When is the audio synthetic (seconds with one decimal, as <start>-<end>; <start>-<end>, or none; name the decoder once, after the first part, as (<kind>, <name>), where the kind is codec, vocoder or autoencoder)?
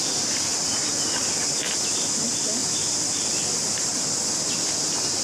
2.6-3.3 (vocoder, BigVGAN v2)